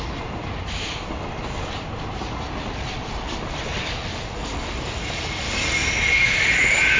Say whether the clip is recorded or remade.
recorded